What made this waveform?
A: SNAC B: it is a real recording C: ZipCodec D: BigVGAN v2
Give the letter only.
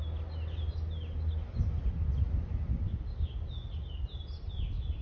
B